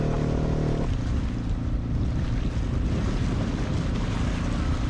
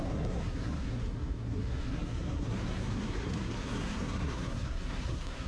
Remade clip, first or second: second